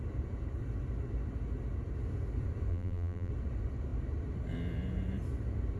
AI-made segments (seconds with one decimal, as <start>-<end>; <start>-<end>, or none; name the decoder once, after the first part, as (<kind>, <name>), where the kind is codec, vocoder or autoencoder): 2.7-3.3 (vocoder, BigVGAN v2)